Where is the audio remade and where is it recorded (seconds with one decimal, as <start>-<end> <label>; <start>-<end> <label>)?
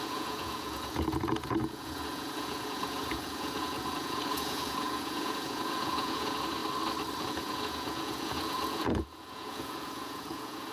0.0-6.6 remade; 6.6-7.2 recorded; 7.2-10.7 remade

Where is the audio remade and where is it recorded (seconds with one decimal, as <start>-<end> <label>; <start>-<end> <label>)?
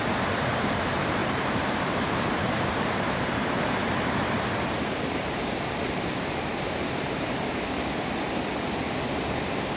0.0-1.2 recorded; 1.2-2.7 remade; 2.7-3.4 recorded; 3.4-7.5 remade; 7.5-9.8 recorded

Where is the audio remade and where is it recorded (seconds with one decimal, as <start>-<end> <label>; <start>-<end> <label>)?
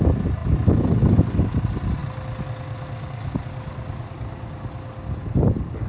0.0-5.9 recorded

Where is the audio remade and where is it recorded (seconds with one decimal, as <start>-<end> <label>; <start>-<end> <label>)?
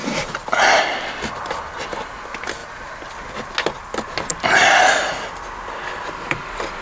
0.0-6.8 recorded